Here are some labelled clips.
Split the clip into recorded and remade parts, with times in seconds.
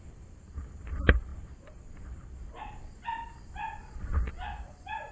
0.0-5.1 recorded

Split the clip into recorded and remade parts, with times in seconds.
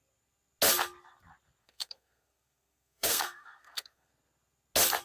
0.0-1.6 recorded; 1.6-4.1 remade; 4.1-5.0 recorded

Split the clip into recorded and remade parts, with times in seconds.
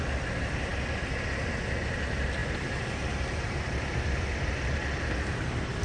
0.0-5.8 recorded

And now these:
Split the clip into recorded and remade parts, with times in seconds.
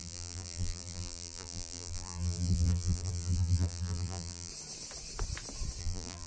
0.0-4.5 remade; 4.5-5.8 recorded; 5.8-6.3 remade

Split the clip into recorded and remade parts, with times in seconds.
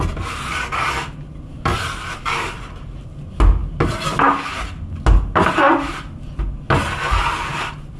0.0-8.0 recorded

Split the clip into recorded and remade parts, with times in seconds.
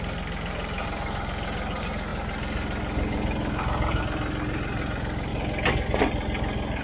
0.0-6.8 recorded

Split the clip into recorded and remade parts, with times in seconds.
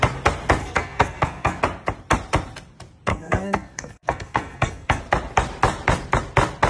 0.0-0.6 recorded; 0.6-1.6 remade; 1.6-3.1 recorded; 3.1-5.0 remade; 5.0-6.7 recorded